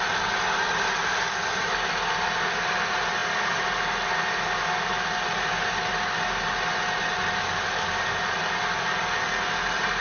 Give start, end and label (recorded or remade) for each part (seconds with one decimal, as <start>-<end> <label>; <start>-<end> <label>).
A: 0.0-10.0 recorded